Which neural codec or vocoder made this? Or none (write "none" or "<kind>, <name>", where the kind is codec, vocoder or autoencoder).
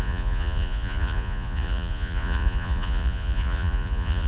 vocoder, Vocos